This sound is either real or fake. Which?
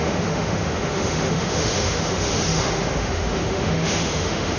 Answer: fake